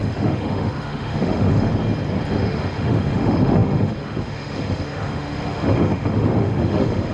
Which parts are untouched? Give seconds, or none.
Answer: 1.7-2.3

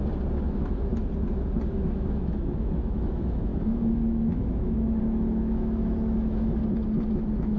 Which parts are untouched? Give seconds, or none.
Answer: 0.0-0.5; 0.9-1.7; 6.6-7.1

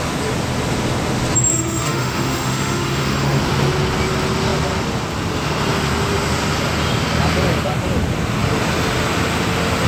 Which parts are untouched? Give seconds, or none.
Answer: 0.0-1.5; 3.4-9.9

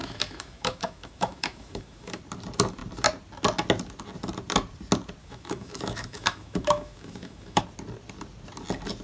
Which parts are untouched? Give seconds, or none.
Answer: 2.2-5.2; 7.6-9.0

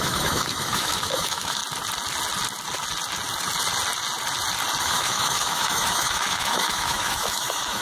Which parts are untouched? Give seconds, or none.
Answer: 1.6-4.8

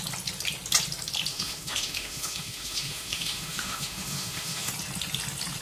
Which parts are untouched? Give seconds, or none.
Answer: 0.0-1.3; 4.7-5.6

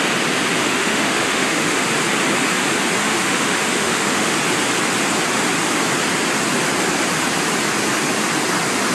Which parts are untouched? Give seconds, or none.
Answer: 0.0-0.6; 1.9-3.0; 4.4-8.9